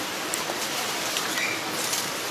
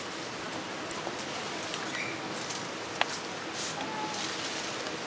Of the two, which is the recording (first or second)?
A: second